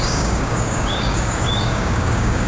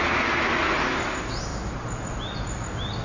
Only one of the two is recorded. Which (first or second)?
second